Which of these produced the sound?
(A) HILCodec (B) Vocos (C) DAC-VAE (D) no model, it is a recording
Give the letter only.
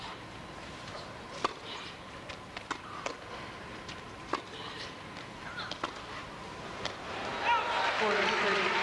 D